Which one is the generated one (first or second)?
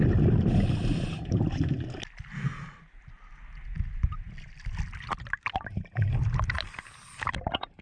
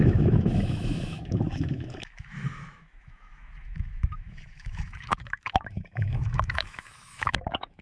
second